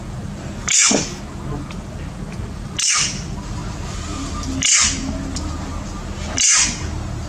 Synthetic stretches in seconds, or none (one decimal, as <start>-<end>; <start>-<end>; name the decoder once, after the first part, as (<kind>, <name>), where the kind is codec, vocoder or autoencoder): 0.6-1.2 (codec, DAC)